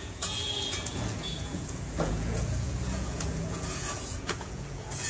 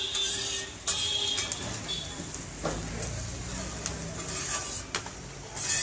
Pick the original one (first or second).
second